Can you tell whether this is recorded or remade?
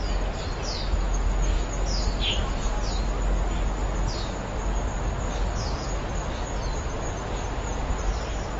recorded